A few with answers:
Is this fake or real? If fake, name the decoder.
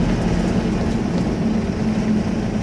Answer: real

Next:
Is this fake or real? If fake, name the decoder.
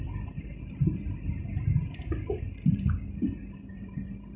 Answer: real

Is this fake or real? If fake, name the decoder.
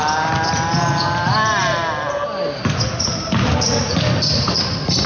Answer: real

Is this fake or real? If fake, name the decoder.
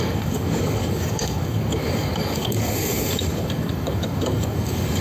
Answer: fake, codec, DAC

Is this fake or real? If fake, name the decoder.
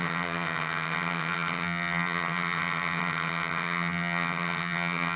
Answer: fake, vocoder, HiFi-GAN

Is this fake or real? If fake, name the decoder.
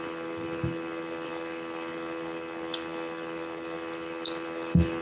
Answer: real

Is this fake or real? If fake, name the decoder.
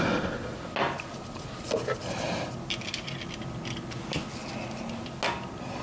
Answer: real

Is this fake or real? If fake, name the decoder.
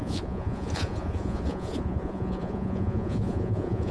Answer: fake, vocoder, Vocos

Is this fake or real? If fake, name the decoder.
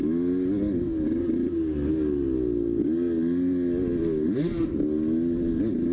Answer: real